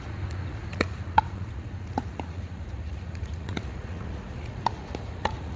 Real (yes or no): no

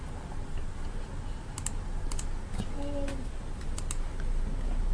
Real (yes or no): yes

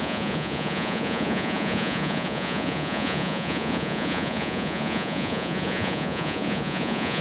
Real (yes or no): no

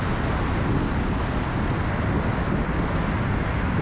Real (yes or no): yes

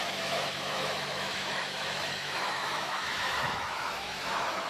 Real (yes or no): no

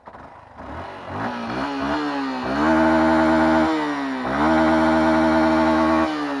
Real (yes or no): yes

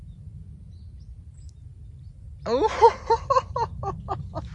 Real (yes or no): yes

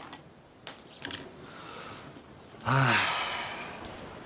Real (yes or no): yes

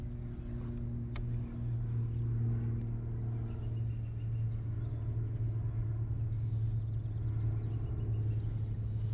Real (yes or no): yes